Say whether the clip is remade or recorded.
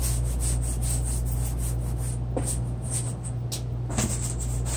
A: recorded